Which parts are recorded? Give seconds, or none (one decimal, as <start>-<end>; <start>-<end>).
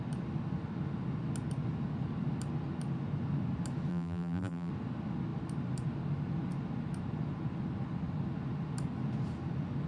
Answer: 0.0-3.9; 4.7-9.9